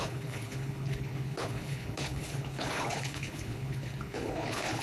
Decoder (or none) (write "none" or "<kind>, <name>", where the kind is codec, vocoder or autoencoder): codec, HILCodec